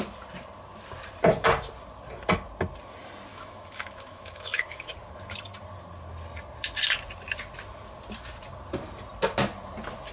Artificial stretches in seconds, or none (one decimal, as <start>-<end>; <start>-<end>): 3.3-4.9